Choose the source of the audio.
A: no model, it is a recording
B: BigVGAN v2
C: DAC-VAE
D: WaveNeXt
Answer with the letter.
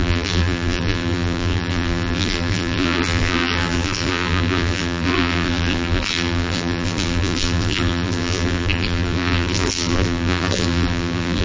B